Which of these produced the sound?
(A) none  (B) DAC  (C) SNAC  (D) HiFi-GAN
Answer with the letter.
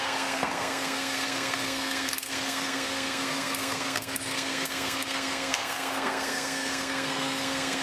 C